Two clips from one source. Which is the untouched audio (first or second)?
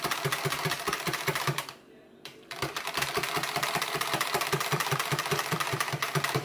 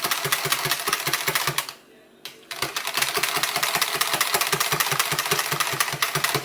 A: second